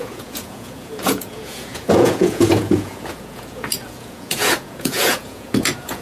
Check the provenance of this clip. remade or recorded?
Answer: remade